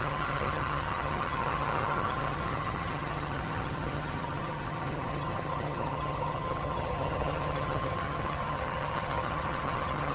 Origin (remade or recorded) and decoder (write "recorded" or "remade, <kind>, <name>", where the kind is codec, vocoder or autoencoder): remade, vocoder, HiFi-GAN